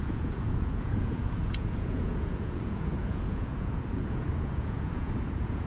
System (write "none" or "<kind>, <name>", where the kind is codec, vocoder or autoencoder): vocoder, Vocos